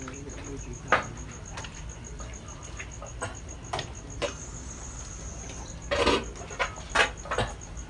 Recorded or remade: recorded